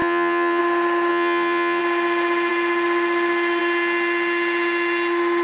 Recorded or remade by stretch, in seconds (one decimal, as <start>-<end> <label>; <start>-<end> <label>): 0.0-0.6 remade; 0.6-1.1 recorded; 1.1-1.8 remade; 1.8-5.4 recorded